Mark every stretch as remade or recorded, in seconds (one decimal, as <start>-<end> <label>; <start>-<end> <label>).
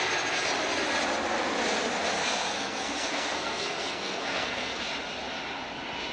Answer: 0.0-2.2 recorded; 2.2-4.8 remade; 4.8-6.1 recorded